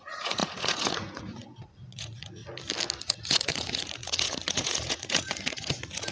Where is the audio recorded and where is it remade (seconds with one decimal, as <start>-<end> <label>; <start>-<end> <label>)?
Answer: 0.0-2.4 remade; 2.4-3.0 recorded; 3.0-6.1 remade